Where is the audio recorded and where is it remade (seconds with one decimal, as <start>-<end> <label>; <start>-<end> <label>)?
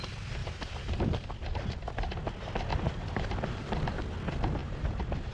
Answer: 0.0-0.4 recorded; 0.4-1.0 remade; 1.0-2.7 recorded; 2.7-4.0 remade; 4.0-4.6 recorded; 4.6-5.3 remade